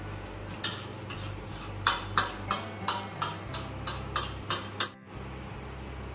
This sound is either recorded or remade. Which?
recorded